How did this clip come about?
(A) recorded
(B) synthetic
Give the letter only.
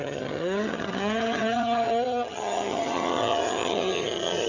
B